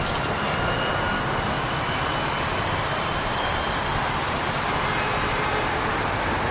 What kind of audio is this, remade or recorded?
recorded